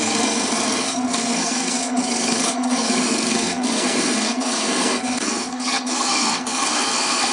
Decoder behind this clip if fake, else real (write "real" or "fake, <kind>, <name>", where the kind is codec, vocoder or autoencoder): fake, codec, SNAC